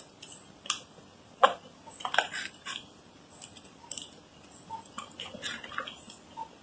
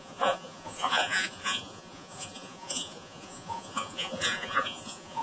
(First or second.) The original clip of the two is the first